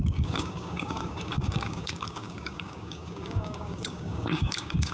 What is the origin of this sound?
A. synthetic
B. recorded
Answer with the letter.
A